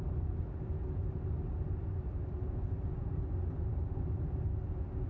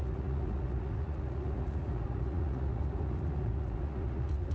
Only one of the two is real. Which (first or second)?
first